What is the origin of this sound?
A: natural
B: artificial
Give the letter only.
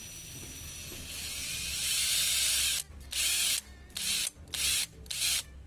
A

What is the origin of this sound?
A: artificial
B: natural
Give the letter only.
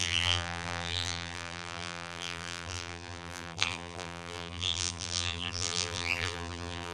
A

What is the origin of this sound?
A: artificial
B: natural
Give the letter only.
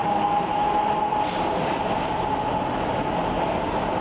B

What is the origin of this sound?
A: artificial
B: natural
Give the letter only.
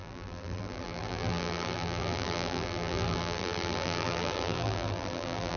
A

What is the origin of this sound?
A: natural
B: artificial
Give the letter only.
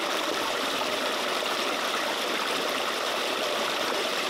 B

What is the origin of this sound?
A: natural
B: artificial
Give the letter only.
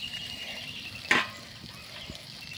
B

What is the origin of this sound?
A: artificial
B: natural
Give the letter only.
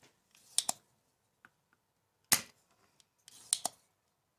B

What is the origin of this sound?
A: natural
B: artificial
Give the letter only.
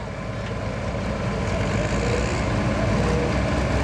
A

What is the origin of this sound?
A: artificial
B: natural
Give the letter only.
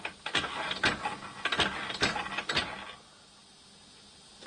B